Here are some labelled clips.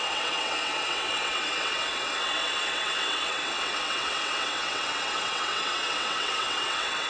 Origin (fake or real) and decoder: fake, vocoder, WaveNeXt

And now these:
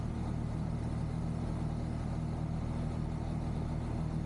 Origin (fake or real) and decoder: real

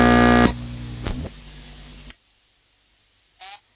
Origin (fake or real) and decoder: real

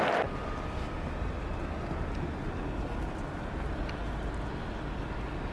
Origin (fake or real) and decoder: real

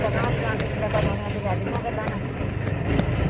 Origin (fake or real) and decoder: real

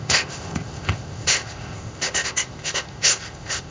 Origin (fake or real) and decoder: fake, codec, ZipCodec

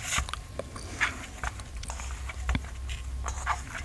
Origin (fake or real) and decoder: real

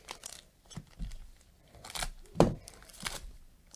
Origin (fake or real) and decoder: fake, vocoder, BigVGAN v2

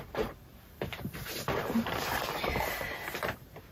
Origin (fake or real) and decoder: fake, vocoder, BigVGAN v2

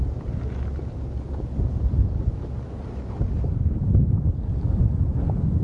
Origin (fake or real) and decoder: real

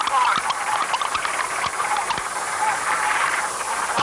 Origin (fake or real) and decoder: real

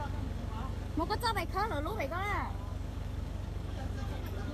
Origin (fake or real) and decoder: fake, codec, DAC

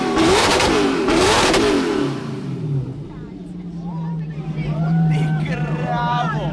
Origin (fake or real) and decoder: fake, vocoder, BigVGAN v2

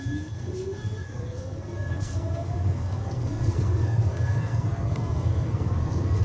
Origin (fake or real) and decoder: fake, codec, SNAC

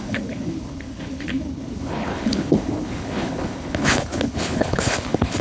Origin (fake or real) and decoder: fake, codec, HILCodec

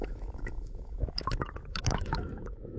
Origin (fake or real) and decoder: fake, autoencoder, DAC-VAE